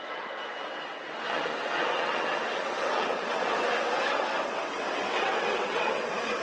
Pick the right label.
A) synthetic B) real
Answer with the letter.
A